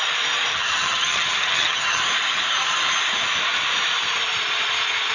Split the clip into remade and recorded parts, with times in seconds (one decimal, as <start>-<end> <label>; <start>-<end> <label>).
0.0-0.5 recorded; 0.5-2.0 remade; 2.0-5.1 recorded